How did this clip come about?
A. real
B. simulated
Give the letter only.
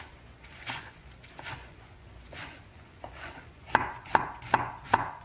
B